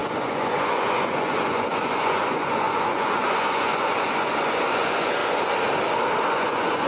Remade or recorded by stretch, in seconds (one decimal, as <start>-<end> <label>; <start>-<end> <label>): 0.0-5.2 remade; 5.2-6.3 recorded; 6.3-6.9 remade